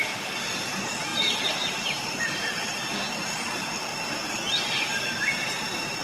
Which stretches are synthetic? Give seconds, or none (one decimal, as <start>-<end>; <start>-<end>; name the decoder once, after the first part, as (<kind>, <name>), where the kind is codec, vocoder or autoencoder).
none